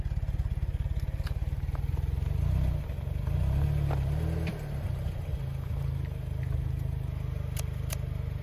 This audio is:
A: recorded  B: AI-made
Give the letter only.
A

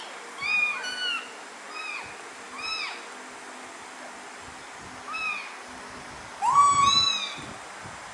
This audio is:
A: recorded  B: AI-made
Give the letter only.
A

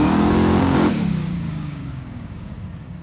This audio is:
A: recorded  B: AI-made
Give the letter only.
B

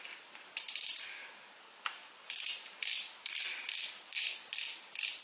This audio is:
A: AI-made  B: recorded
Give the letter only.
B